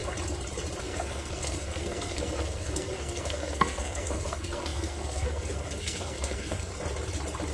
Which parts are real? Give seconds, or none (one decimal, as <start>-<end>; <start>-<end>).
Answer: 0.0-0.8; 6.7-7.5